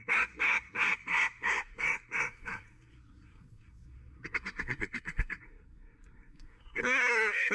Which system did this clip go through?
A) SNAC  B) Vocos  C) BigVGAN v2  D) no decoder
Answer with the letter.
A